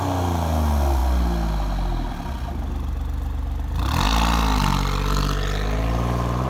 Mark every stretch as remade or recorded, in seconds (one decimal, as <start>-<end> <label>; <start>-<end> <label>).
0.0-6.5 recorded